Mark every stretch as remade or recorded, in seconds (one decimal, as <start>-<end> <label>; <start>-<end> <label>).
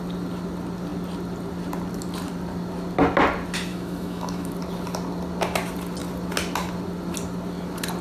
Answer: 0.0-3.7 recorded; 3.7-4.5 remade; 4.5-8.0 recorded